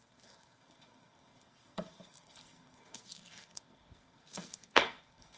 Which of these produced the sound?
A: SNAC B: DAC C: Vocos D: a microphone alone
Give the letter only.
A